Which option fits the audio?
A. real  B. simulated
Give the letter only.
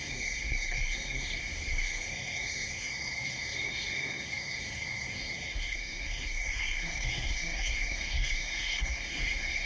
B